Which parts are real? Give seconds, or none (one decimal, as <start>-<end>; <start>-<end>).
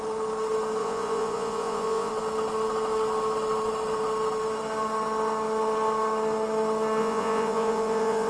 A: 0.0-0.8; 2.1-7.0